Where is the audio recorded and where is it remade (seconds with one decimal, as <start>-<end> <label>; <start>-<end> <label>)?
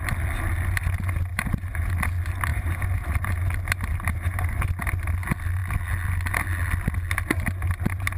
0.0-1.3 recorded; 1.3-1.9 remade; 1.9-2.5 recorded; 2.5-3.4 remade; 3.4-3.9 recorded; 3.9-4.6 remade; 4.6-8.2 recorded